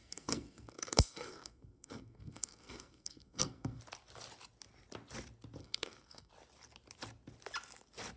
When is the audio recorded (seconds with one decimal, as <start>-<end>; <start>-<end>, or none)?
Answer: 3.8-5.6; 6.3-8.2